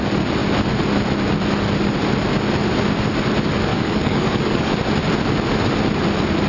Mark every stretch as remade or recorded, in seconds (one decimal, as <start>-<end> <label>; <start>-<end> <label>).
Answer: 0.0-3.7 recorded; 3.7-4.7 remade; 4.7-6.5 recorded